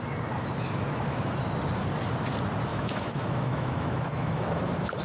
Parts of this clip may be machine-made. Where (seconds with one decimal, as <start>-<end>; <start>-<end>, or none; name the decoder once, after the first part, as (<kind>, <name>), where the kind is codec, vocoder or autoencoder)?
2.7-4.6 (autoencoder, DAC-VAE)